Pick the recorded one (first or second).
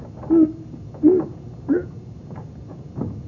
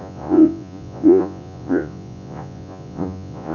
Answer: first